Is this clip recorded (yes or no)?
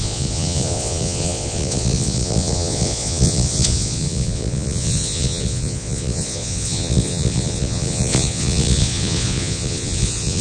no